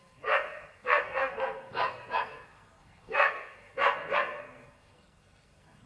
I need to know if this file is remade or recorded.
remade